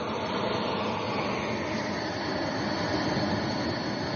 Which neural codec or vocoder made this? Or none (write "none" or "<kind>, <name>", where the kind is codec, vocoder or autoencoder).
none